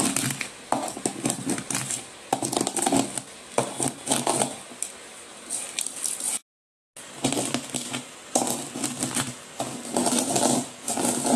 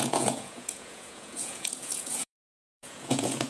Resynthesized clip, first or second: second